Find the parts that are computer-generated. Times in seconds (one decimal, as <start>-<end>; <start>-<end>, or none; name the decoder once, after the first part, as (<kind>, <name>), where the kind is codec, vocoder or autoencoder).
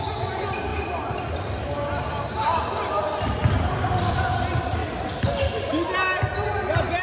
none